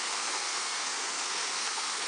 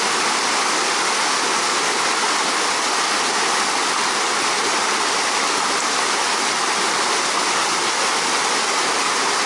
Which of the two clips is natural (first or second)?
second